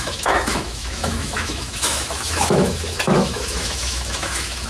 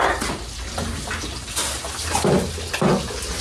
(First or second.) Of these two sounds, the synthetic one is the first